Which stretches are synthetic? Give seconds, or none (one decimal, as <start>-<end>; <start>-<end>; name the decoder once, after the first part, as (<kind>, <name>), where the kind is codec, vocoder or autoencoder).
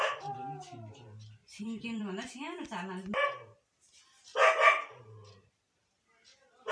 1.4-2.0 (vocoder, Vocos)